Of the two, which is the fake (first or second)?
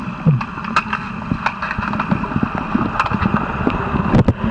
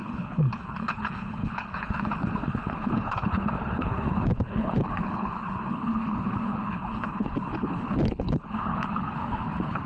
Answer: second